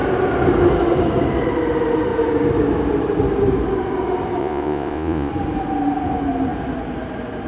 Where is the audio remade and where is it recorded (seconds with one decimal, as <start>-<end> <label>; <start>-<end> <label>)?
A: 0.0-4.4 recorded; 4.4-5.3 remade; 5.3-7.5 recorded